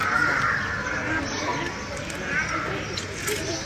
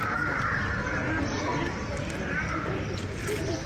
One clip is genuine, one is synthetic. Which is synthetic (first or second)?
second